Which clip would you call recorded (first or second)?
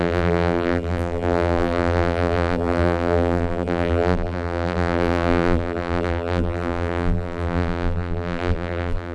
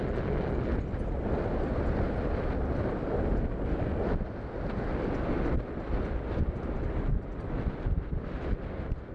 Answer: second